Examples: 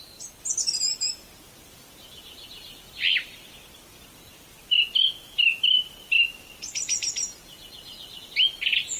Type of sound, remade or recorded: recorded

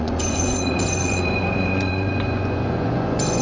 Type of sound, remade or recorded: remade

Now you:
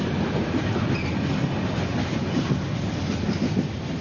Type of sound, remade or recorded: recorded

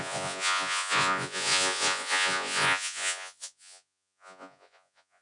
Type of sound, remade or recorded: remade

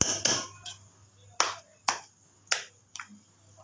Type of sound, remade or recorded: recorded